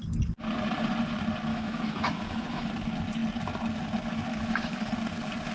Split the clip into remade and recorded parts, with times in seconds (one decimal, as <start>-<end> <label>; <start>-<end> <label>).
0.0-1.5 recorded; 1.5-2.7 remade; 2.7-4.3 recorded; 4.3-4.9 remade; 4.9-5.5 recorded

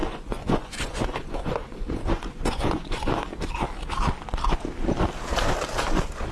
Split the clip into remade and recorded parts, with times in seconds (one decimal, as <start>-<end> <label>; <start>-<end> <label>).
0.0-3.3 remade; 3.3-6.3 recorded

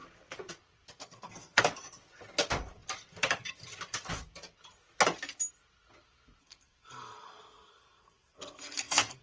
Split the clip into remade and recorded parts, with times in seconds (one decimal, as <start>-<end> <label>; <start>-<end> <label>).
0.0-1.0 recorded; 1.0-1.6 remade; 1.6-6.4 recorded; 6.4-9.2 remade

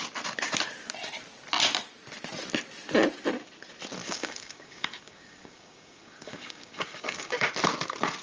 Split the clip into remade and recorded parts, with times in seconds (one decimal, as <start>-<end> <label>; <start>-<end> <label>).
0.0-4.0 recorded; 4.0-7.5 remade; 7.5-8.2 recorded

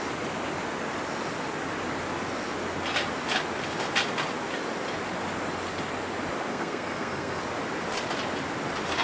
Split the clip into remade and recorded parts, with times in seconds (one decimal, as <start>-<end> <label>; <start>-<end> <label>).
0.0-6.5 recorded; 6.5-7.4 remade; 7.4-9.0 recorded

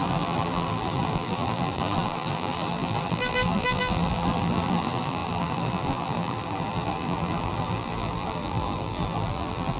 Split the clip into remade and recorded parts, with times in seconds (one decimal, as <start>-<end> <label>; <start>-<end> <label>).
0.0-9.8 remade

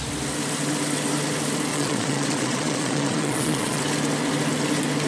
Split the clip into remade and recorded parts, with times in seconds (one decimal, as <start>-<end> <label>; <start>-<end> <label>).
0.0-1.7 recorded; 1.7-3.8 remade; 3.8-5.1 recorded

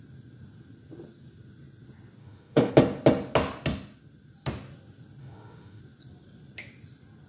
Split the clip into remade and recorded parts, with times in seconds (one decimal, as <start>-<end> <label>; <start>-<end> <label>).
0.0-2.2 recorded; 2.2-2.7 remade; 2.7-5.2 recorded; 5.2-5.8 remade; 5.8-7.3 recorded